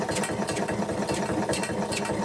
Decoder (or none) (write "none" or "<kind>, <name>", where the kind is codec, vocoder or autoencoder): none